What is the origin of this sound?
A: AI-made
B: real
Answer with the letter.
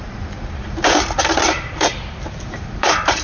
A